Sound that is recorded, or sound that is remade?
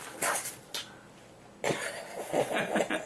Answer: recorded